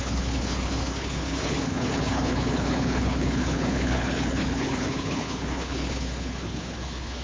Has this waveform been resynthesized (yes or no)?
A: yes